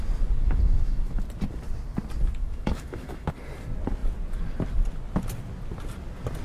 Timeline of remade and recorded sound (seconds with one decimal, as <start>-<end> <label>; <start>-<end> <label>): 0.0-0.4 recorded; 0.4-1.2 remade; 1.2-2.4 recorded; 2.4-3.3 remade; 3.3-6.4 recorded